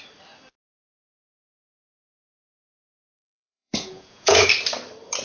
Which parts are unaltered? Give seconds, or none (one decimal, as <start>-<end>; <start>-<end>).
0.0-1.4; 4.5-5.2